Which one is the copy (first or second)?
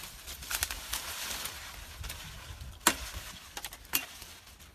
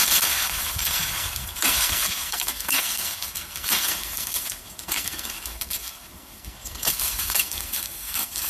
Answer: second